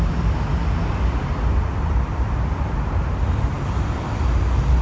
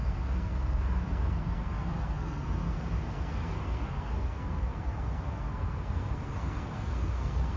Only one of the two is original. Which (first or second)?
first